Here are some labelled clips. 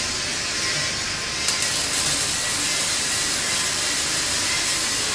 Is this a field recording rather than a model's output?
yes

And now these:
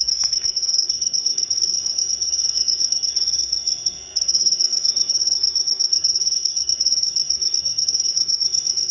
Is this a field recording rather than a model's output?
no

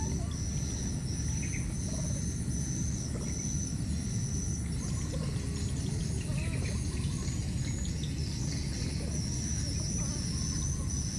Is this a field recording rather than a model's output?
yes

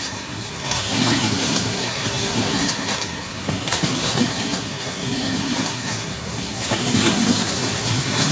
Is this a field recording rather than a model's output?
no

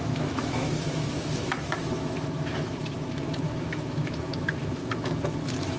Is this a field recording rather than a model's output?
no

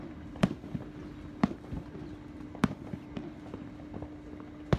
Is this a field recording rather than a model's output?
yes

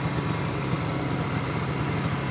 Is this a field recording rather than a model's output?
yes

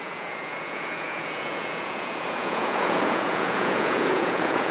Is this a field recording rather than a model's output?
no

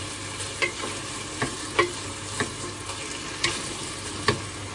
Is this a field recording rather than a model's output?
yes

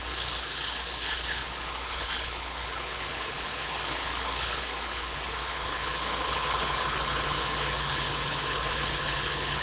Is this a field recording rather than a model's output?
no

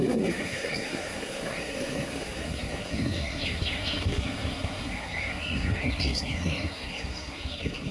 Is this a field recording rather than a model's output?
no